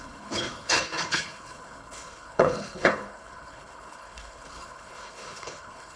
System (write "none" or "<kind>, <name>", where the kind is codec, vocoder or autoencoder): codec, HILCodec